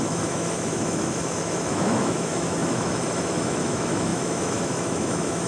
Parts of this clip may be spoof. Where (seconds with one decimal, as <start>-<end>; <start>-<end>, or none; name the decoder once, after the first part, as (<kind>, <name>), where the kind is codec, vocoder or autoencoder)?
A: 0.0-5.5 (autoencoder, DAC-VAE)